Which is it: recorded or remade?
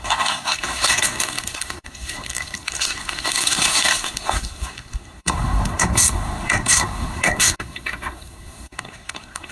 remade